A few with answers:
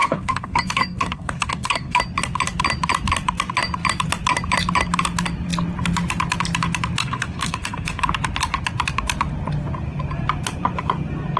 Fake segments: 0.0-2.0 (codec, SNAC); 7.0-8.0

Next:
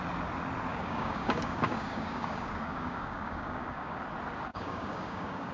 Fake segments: 0.7-4.0 (codec, DAC); 4.5-5.5

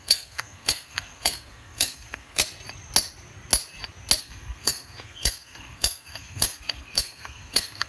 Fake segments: 0.0-2.4 (codec, SNAC); 4.2-7.9

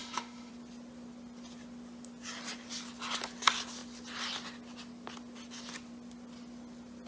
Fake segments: 0.0-0.5 (autoencoder, DAC-VAE)